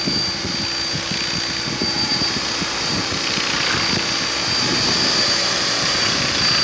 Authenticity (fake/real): real